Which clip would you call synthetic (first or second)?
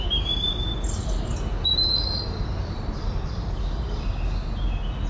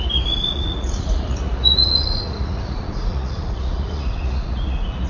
second